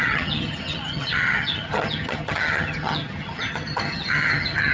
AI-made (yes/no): yes